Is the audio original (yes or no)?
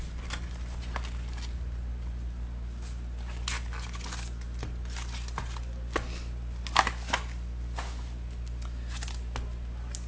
yes